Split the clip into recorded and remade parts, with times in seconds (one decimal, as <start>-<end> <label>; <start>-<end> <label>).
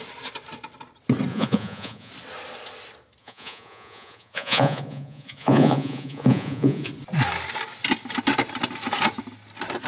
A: 0.0-1.3 recorded; 1.3-2.1 remade; 2.1-3.2 recorded; 3.2-6.9 remade; 6.9-9.9 recorded